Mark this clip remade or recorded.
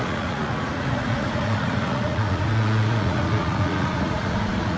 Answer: remade